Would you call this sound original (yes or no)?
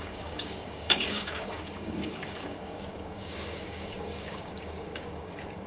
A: no